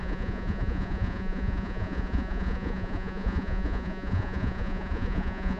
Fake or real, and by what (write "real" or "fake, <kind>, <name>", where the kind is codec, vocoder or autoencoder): fake, vocoder, Vocos